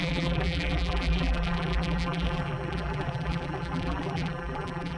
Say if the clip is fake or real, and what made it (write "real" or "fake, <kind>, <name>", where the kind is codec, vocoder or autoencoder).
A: fake, vocoder, BigVGAN v2